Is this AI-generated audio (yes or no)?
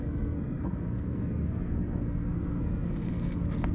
yes